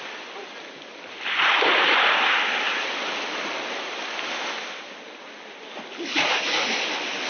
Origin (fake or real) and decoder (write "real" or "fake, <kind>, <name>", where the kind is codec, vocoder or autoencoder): real